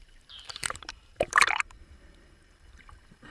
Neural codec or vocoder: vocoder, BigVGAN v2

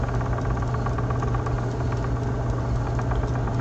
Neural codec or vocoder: none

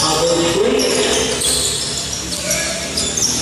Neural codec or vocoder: none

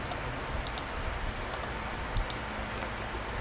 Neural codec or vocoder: none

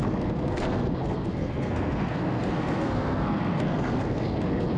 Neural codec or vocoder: codec, SNAC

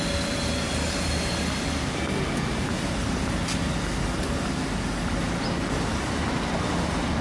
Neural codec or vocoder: none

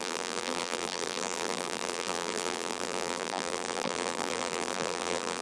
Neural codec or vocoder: vocoder, BigVGAN v2